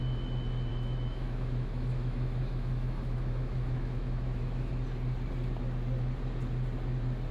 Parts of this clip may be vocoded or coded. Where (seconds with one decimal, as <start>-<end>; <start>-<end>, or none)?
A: 0.7-4.7